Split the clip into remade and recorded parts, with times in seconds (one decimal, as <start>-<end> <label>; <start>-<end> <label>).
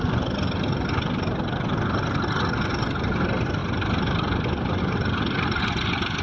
0.0-6.2 recorded